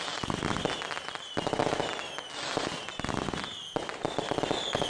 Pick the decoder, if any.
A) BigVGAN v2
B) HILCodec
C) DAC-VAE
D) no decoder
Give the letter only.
D